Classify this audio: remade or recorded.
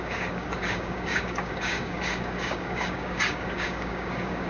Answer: remade